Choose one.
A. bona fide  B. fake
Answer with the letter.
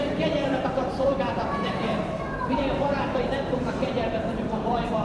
B